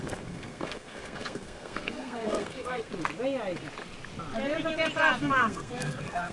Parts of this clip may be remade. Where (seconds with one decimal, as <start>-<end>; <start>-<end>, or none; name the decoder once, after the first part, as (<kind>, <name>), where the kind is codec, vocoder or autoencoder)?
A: 0.0-2.9 (codec, SNAC); 5.2-6.3